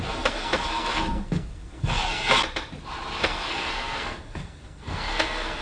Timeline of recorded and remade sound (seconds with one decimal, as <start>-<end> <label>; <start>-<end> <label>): 0.0-2.4 remade; 2.4-3.2 recorded; 3.2-5.6 remade